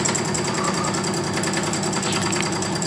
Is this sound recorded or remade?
recorded